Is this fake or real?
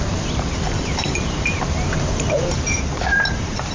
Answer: fake